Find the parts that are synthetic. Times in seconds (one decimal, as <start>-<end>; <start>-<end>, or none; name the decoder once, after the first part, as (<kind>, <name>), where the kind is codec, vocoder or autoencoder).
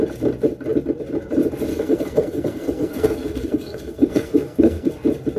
1.7-4.9 (codec, SNAC)